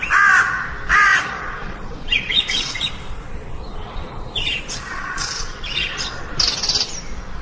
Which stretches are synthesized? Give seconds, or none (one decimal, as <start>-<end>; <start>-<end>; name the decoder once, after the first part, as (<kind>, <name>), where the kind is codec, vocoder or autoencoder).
1.1-2.9 (vocoder, Vocos); 3.7-6.1